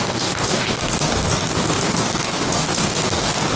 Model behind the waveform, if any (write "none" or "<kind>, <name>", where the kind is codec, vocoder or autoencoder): codec, DAC